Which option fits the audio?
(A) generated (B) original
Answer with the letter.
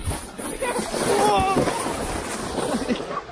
B